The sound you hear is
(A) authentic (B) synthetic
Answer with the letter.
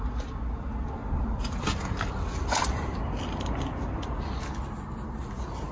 A